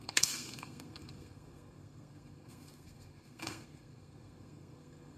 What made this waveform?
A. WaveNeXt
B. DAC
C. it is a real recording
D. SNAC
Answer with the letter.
D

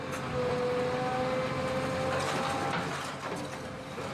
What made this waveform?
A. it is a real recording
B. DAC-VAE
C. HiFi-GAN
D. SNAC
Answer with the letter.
A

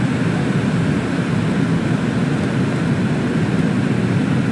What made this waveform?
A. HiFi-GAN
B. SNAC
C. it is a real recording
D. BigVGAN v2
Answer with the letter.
C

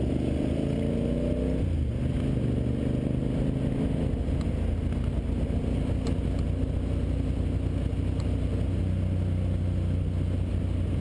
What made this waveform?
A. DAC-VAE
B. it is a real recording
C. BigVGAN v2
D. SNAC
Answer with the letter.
B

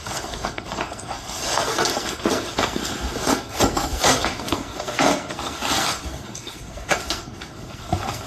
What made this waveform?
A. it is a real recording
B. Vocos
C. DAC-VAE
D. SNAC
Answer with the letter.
D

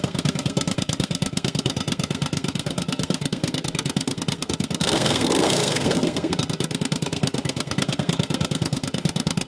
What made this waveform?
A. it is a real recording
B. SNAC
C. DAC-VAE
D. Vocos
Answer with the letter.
B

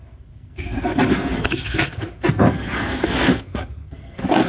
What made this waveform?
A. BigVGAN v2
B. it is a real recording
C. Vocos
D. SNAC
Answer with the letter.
D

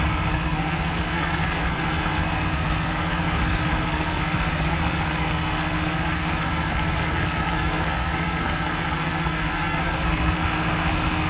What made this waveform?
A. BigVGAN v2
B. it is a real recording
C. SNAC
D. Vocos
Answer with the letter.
C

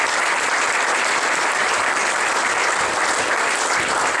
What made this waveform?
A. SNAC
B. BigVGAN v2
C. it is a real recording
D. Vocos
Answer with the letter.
C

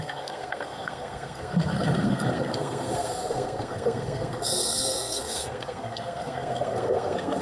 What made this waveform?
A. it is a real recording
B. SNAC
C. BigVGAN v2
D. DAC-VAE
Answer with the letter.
B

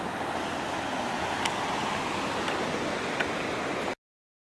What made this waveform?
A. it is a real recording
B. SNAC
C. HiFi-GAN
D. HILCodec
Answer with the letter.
A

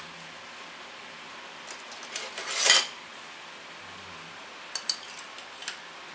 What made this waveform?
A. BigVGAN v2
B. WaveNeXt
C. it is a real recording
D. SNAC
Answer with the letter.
C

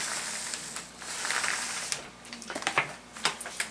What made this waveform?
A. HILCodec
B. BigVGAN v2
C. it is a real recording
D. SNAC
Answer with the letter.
C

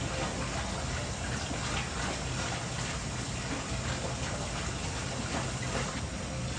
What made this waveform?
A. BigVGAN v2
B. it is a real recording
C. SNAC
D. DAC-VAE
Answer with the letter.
B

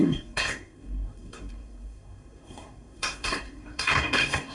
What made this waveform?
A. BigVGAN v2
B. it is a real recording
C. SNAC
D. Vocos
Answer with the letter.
C